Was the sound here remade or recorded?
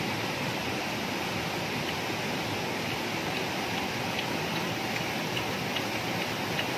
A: recorded